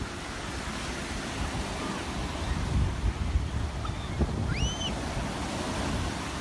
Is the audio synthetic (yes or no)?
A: no